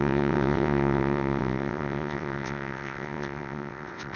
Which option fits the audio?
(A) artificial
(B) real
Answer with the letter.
A